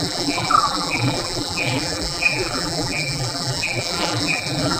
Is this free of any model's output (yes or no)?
no